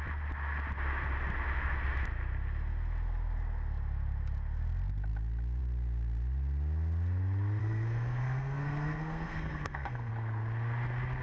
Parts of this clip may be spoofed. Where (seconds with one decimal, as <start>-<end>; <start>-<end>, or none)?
7.6-10.1